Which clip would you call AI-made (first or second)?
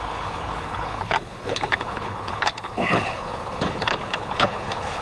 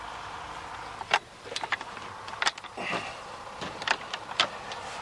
first